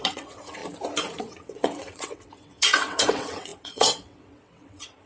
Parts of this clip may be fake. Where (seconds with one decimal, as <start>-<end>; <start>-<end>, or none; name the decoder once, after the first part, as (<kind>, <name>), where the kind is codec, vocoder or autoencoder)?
0.0-0.6 (vocoder, WaveNeXt); 1.2-5.1